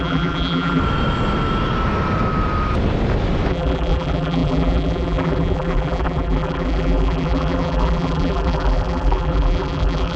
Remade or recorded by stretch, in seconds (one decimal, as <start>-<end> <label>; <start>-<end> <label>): 0.0-0.8 remade; 0.8-3.5 recorded; 3.5-10.2 remade